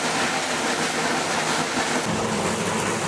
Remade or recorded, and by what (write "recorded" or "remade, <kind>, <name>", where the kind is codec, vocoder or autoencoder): recorded